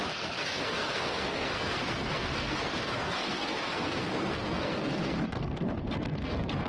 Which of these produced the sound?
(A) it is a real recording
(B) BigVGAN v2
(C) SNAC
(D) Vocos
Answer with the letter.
C